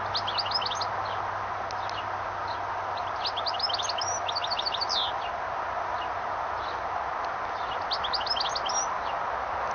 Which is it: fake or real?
real